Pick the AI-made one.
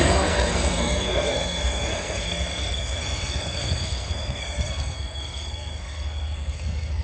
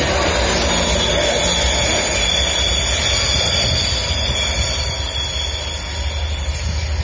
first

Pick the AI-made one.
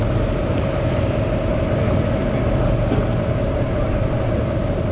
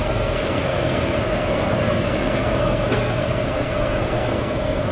second